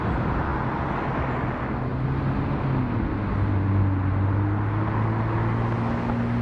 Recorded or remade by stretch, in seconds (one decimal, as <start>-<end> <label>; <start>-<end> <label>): 0.0-6.4 recorded

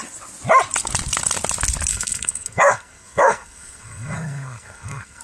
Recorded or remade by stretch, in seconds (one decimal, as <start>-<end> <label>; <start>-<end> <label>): 0.0-1.9 recorded; 1.9-5.2 remade

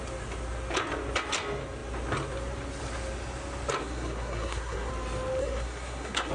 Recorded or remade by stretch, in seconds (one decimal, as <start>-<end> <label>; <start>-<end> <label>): 0.0-3.8 recorded; 3.8-4.9 remade; 4.9-5.4 recorded; 5.4-6.3 remade

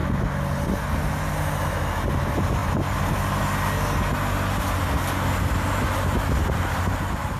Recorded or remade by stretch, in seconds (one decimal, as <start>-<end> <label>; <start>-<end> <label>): 0.0-7.4 recorded

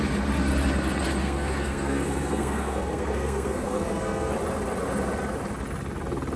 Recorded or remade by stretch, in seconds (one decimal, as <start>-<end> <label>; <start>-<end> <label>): 0.0-1.2 recorded; 1.2-4.3 remade; 4.3-6.4 recorded